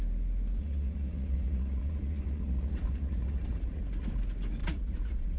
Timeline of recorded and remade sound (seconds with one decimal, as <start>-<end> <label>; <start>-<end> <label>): 0.0-0.6 recorded; 0.6-3.8 remade; 3.8-4.6 recorded; 4.6-5.4 remade